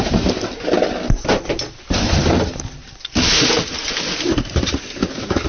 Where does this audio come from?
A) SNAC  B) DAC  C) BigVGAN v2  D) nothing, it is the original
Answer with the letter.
D